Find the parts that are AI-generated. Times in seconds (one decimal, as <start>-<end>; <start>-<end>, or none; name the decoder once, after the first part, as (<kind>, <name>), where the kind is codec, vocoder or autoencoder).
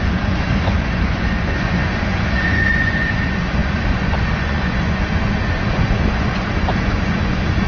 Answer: 0.0-7.7 (vocoder, Vocos)